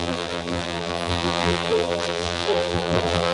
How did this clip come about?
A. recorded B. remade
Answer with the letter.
B